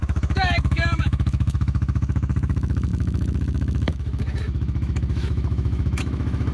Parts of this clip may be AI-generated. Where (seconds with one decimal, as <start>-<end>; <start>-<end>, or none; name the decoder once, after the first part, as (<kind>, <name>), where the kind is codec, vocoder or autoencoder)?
0.0-6.5 (autoencoder, DAC-VAE)